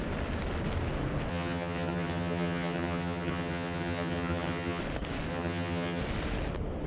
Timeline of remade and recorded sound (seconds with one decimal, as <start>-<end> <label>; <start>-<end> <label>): 0.0-1.3 recorded; 1.3-4.8 remade; 4.8-5.3 recorded; 5.3-6.0 remade; 6.0-6.9 recorded